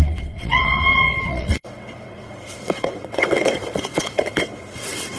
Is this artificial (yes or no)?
yes